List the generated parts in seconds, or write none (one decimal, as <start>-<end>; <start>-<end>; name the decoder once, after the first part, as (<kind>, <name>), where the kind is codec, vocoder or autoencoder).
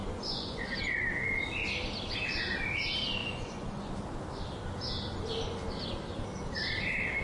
0.0-0.6 (vocoder, Vocos); 3.2-3.9